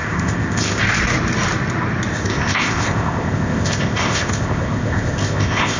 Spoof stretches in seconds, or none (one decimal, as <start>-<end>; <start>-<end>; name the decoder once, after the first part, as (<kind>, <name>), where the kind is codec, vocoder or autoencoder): 0.0-0.8 (codec, ZipCodec); 2.1-5.8